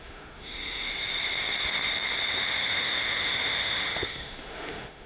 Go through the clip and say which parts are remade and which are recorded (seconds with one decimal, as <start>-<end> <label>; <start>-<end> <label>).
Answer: 0.0-0.9 remade; 0.9-2.3 recorded; 2.3-5.1 remade